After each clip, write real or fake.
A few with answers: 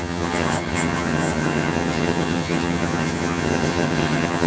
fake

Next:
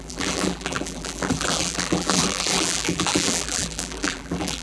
fake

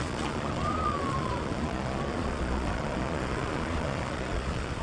fake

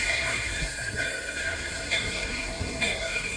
fake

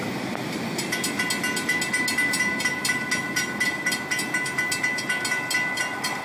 real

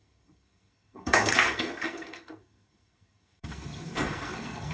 fake